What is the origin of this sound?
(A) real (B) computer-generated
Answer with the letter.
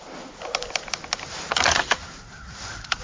A